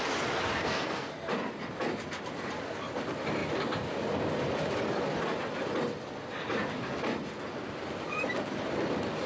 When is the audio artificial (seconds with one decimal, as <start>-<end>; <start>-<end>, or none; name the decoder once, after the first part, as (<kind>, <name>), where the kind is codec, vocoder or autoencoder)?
0.6-1.1 (codec, SNAC)